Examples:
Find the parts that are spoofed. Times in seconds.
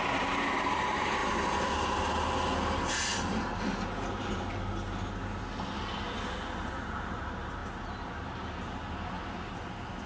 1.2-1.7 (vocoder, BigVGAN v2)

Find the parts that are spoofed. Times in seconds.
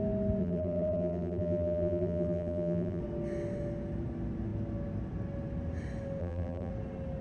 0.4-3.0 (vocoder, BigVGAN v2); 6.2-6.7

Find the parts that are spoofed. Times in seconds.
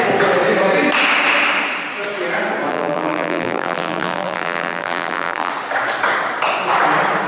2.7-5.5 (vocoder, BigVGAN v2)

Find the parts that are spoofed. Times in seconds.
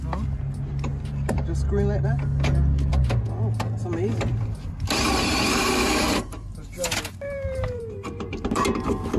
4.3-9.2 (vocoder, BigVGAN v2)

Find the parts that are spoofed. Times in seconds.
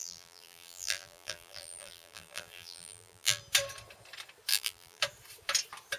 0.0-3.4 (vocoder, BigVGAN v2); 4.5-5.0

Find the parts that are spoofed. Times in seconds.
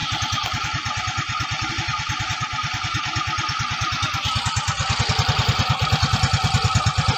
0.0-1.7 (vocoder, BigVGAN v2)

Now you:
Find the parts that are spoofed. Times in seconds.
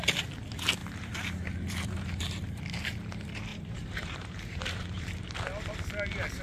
0.8-2.6 (vocoder, BigVGAN v2); 3.5-5.3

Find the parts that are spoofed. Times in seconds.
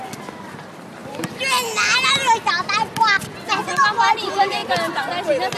0.0-4.6 (vocoder, BigVGAN v2); 5.1-5.6